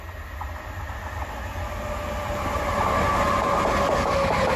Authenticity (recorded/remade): recorded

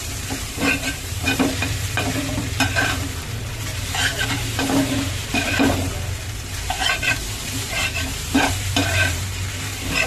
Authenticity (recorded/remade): remade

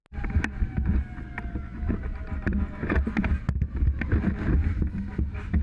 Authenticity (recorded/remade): recorded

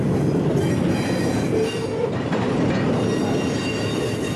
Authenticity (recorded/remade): recorded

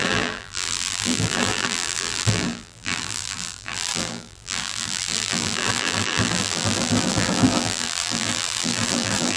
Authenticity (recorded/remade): remade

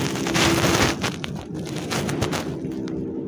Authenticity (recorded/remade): recorded